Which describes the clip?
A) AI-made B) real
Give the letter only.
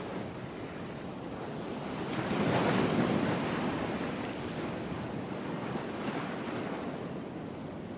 B